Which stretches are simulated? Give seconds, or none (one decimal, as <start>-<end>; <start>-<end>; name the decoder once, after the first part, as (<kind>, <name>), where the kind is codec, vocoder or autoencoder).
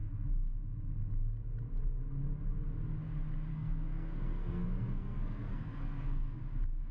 3.5-6.4 (codec, SNAC)